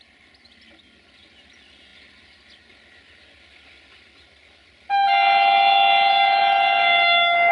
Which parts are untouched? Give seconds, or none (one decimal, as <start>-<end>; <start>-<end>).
0.0-7.5